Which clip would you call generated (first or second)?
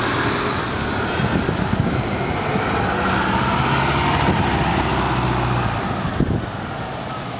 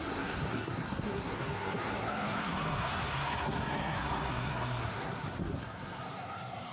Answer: second